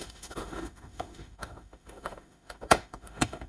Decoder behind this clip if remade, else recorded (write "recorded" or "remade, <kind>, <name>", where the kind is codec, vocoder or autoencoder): remade, autoencoder, DAC-VAE